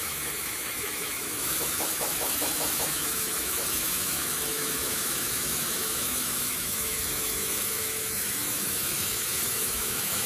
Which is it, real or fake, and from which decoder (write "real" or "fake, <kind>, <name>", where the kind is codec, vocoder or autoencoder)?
fake, autoencoder, DAC-VAE